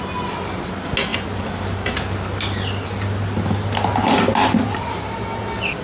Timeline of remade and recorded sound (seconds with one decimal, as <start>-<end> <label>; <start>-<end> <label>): 0.0-5.8 recorded